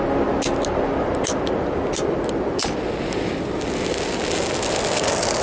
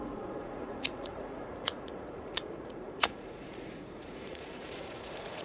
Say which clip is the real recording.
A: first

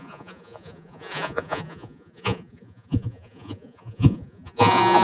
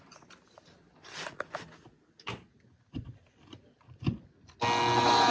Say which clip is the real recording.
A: second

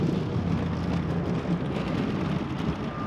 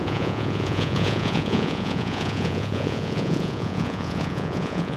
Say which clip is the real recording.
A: first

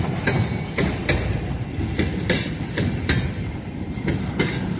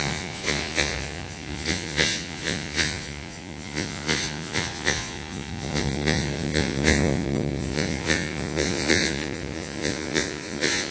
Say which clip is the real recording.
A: first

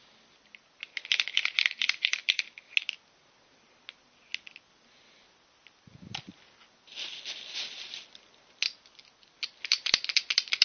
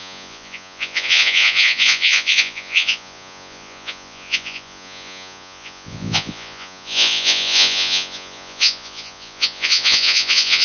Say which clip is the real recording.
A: first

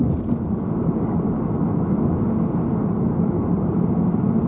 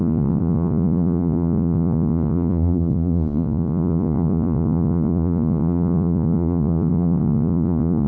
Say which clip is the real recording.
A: first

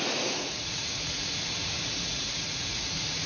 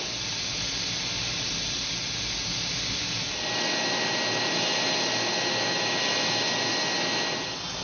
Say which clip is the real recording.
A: second